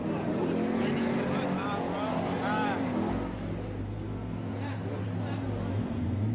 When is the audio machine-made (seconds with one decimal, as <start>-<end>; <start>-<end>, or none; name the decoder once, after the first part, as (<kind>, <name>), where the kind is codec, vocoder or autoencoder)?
3.8-4.4 (codec, SNAC); 5.7-6.3